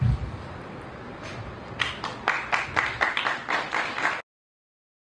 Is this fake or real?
real